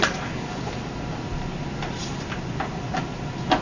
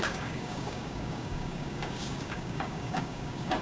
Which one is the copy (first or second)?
second